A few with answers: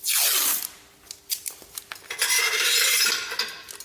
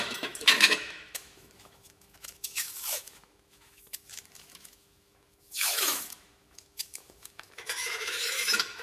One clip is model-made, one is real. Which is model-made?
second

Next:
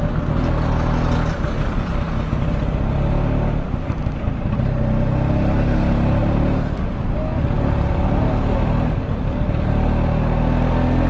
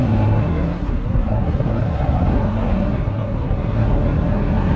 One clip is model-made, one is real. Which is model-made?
second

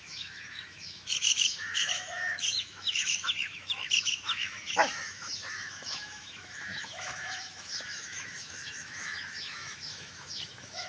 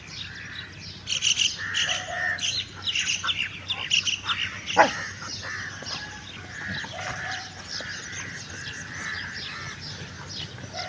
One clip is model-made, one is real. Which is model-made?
first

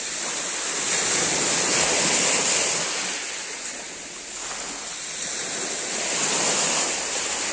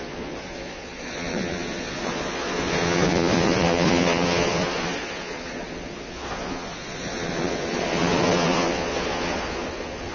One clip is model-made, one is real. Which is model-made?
second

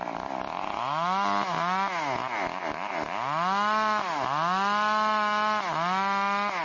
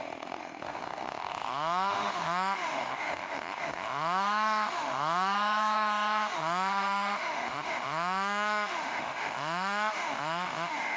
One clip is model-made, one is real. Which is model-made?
second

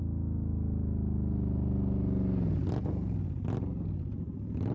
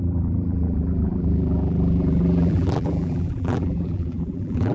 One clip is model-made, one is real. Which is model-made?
second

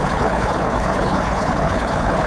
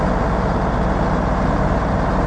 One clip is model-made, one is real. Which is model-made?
first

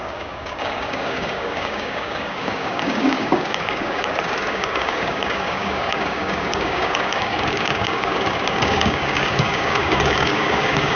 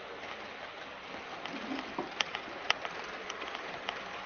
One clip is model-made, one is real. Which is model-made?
first